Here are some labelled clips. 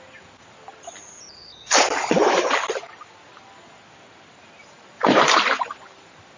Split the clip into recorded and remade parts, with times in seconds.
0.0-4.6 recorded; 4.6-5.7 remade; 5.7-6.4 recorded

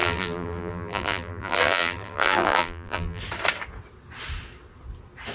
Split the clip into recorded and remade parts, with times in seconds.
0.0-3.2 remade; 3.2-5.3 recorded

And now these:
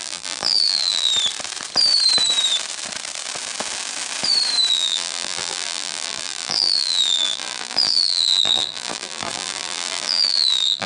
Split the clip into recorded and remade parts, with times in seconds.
0.0-1.1 remade; 1.1-4.7 recorded; 4.7-10.9 remade

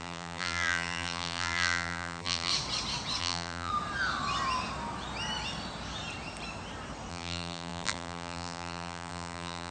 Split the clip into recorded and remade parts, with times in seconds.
0.0-2.5 remade; 2.5-3.2 recorded; 3.2-3.7 remade; 3.7-7.1 recorded; 7.1-9.7 remade

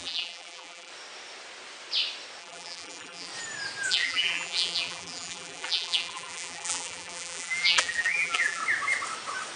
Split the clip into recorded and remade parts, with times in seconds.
0.0-0.9 remade; 0.9-2.4 recorded; 2.4-3.3 remade; 3.3-3.9 recorded; 3.9-8.6 remade; 8.6-9.6 recorded

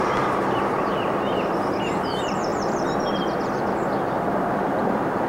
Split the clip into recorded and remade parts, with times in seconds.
0.0-2.5 remade; 2.5-4.5 recorded; 4.5-5.3 remade